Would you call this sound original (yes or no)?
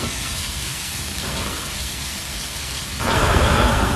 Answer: no